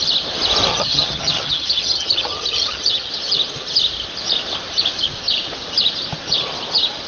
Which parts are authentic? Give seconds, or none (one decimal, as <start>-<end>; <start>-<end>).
0.0-0.7; 3.1-7.1